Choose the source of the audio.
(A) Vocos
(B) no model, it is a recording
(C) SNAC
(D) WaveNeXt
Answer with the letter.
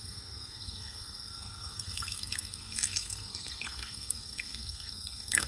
C